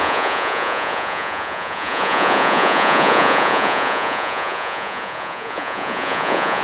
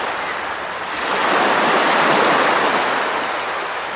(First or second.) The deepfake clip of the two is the first